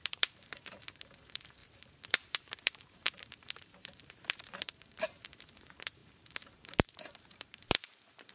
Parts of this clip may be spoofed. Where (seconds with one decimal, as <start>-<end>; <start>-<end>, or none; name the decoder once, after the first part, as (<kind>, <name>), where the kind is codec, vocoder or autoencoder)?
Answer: 0.0-8.3 (vocoder, BigVGAN v2)